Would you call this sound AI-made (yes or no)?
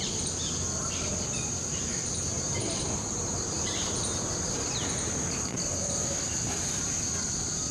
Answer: no